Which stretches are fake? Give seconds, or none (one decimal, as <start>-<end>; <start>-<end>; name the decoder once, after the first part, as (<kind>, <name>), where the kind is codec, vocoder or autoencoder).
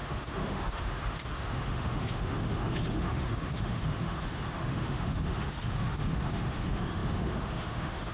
0.0-8.1 (autoencoder, DAC-VAE)